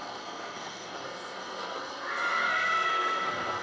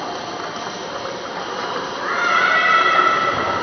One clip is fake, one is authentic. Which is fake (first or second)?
first